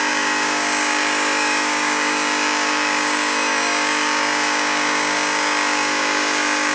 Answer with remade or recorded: remade